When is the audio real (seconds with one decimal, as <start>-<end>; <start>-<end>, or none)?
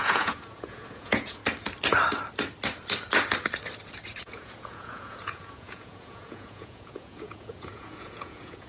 1.4-4.2